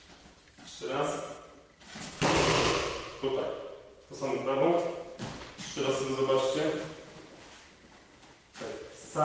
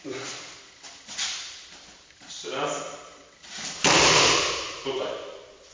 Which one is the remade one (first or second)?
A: second